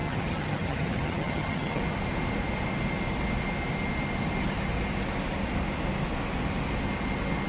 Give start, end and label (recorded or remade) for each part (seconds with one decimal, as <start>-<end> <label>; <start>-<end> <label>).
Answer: 0.0-1.8 remade; 1.8-7.5 recorded